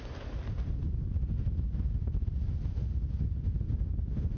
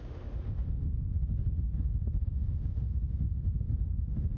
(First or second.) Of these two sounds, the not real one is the second